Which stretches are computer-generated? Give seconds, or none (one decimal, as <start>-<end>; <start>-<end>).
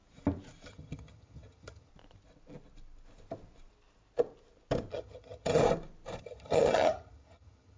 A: 0.7-1.9; 4.9-5.6; 6.2-7.8